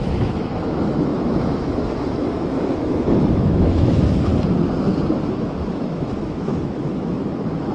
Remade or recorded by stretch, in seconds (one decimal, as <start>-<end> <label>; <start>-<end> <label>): 0.0-4.3 remade; 4.3-5.3 recorded; 5.3-7.7 remade